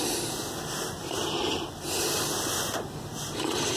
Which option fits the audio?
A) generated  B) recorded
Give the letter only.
B